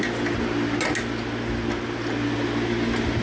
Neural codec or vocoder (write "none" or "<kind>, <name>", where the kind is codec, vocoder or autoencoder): none